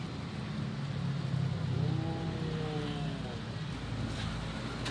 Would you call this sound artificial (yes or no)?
no